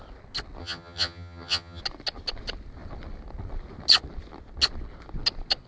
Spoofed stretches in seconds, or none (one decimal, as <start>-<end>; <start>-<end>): 0.6-1.8